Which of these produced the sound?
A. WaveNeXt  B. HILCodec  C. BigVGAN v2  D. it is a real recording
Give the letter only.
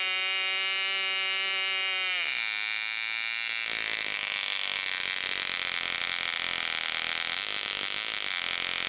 D